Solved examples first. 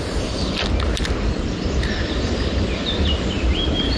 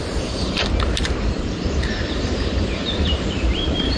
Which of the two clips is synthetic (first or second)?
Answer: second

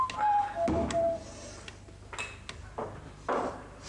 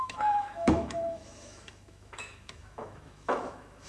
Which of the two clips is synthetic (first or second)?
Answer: second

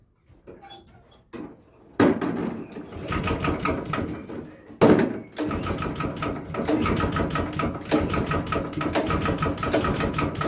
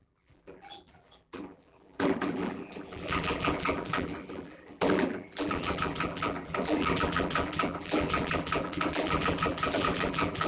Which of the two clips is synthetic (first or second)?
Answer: second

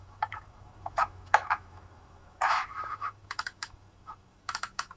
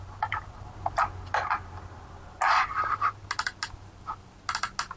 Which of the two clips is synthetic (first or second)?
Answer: first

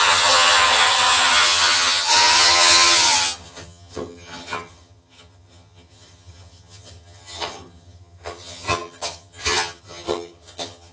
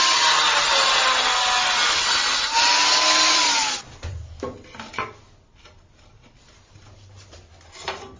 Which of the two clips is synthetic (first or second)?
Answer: first